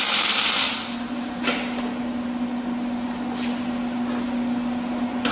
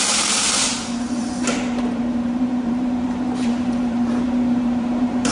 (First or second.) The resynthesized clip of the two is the second